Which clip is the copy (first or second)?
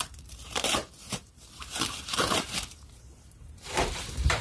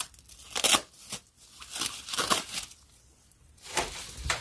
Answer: first